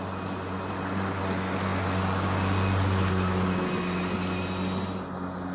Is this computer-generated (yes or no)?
no